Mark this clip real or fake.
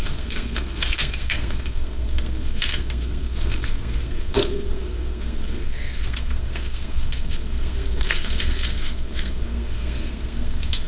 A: fake